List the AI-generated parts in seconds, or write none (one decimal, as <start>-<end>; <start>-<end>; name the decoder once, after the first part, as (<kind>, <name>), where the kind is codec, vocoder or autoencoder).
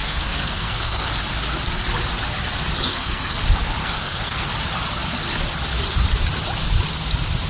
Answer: 0.0-1.1 (codec, SNAC); 2.9-3.4; 3.8-4.5